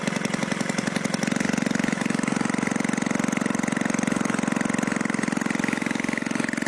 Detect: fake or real real